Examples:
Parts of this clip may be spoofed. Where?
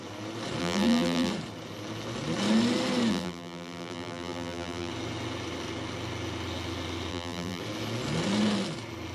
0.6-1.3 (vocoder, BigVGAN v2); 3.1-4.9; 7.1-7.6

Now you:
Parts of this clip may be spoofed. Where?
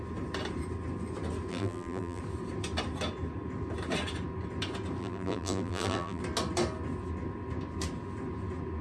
1.5-2.2 (vocoder, BigVGAN v2); 5.0-6.2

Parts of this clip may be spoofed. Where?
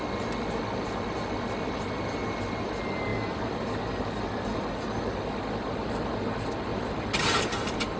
6.7-8.0 (vocoder, BigVGAN v2)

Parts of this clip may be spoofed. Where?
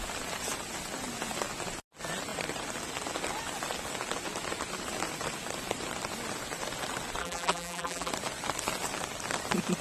7.2-8.1 (vocoder, BigVGAN v2)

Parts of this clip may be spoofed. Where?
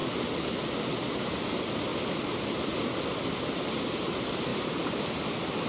1.9-2.8 (vocoder, BigVGAN v2); 4.5-5.7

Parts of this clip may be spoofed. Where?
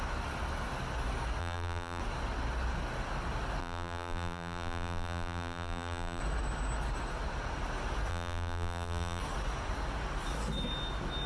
1.4-2.0 (vocoder, BigVGAN v2); 3.6-6.2; 8.1-9.2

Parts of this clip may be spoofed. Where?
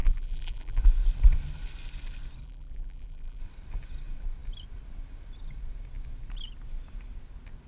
0.0-0.8 (vocoder, BigVGAN v2); 2.4-3.4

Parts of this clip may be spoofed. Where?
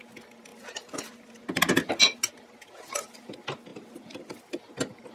0.5-1.0 (vocoder, BigVGAN v2); 3.7-4.4